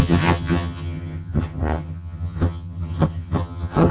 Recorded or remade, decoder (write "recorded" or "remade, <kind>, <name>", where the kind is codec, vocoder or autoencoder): remade, vocoder, HiFi-GAN